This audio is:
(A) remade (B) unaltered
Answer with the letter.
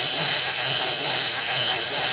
B